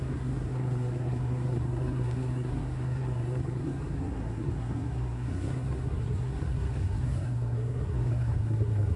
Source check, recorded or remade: remade